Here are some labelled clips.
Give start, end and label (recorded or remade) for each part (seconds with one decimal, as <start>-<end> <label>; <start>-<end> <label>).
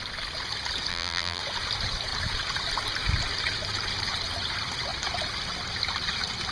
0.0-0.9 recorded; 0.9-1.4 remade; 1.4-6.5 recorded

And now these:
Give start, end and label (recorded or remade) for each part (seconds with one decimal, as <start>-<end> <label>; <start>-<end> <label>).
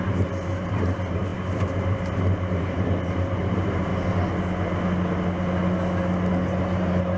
0.0-3.9 remade; 3.9-6.6 recorded; 6.6-7.2 remade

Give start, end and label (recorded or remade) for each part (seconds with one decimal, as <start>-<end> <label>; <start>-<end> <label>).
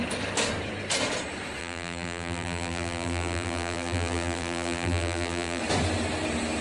0.0-1.6 recorded; 1.6-5.6 remade; 5.6-6.6 recorded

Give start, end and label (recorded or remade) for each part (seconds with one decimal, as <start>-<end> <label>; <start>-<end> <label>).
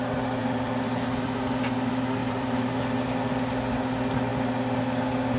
0.0-0.4 recorded; 0.4-1.5 remade; 1.5-2.2 recorded; 2.2-2.7 remade; 2.7-5.4 recorded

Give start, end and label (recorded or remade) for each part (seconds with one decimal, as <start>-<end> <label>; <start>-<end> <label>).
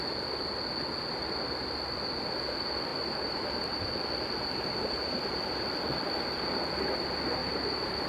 0.0-2.9 recorded; 2.9-3.8 remade; 3.8-7.4 recorded; 7.4-8.1 remade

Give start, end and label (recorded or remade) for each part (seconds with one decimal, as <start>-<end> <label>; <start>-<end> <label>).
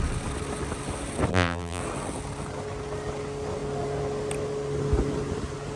0.0-1.3 recorded; 1.3-1.8 remade; 1.8-5.8 recorded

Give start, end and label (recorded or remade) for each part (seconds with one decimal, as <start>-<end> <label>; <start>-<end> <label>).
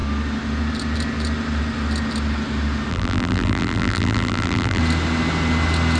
0.0-2.9 recorded; 2.9-4.8 remade; 4.8-6.0 recorded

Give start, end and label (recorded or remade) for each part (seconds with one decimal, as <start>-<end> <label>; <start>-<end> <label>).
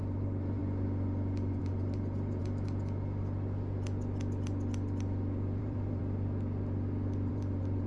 0.0-0.6 remade; 0.6-1.6 recorded; 1.6-2.4 remade; 2.4-5.6 recorded; 5.6-6.0 remade; 6.0-7.3 recorded; 7.3-7.9 remade